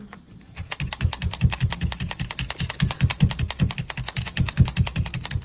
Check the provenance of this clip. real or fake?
real